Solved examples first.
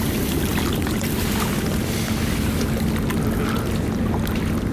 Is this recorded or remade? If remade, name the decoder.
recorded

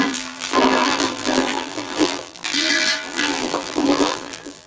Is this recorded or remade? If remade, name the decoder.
remade, vocoder, BigVGAN v2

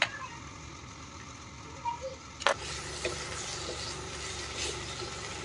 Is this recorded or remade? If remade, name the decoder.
recorded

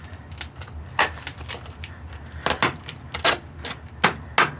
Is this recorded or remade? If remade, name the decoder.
recorded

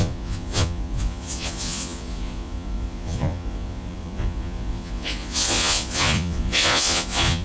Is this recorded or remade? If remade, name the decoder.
remade, vocoder, Vocos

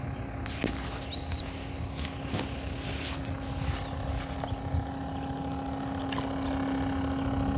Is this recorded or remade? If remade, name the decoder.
recorded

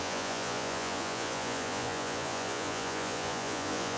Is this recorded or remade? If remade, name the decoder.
remade, vocoder, Vocos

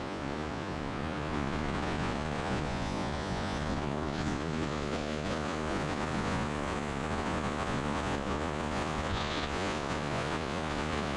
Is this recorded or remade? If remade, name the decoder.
remade, vocoder, Vocos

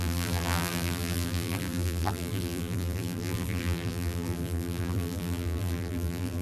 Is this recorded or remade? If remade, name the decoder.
remade, vocoder, BigVGAN v2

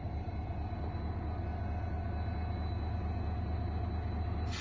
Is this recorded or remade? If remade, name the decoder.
recorded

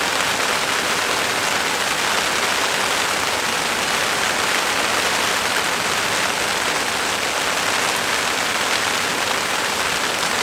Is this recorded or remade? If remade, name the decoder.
recorded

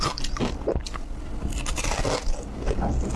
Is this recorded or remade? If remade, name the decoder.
recorded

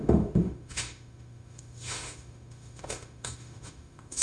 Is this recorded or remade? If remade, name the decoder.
remade, autoencoder, DAC-VAE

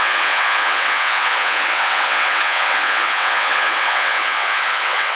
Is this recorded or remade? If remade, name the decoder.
remade, vocoder, WaveNeXt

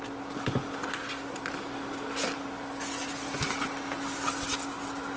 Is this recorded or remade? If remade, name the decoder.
recorded